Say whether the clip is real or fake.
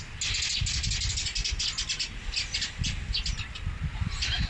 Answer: real